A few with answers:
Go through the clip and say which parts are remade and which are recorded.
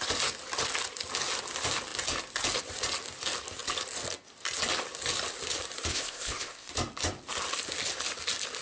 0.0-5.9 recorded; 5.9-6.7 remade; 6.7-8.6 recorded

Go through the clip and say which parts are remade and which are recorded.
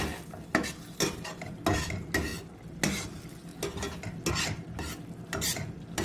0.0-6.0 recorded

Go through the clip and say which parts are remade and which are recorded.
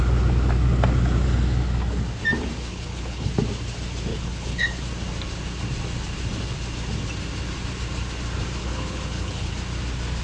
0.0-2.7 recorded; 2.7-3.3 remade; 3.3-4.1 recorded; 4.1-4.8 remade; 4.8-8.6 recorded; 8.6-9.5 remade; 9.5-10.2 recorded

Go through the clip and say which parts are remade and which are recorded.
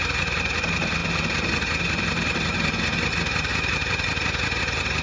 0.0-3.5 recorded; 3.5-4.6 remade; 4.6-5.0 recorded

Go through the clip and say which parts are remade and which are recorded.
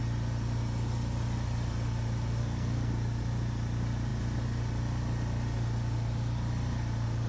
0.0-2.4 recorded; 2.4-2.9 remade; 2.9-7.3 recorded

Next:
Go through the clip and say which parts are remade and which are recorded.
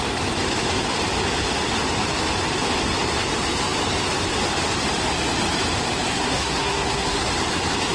0.0-6.1 recorded; 6.1-7.3 remade; 7.3-7.9 recorded